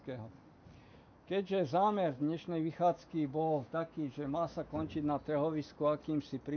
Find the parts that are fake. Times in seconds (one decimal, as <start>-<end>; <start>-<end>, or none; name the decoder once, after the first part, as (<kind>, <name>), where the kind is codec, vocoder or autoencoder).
0.9-4.9 (autoencoder, DAC-VAE)